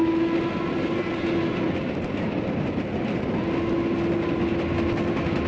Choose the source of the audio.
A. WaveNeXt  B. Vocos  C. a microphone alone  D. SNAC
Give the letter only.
C